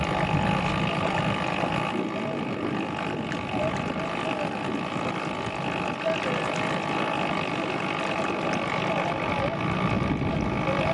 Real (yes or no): yes